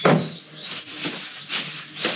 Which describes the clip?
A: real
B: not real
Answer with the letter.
A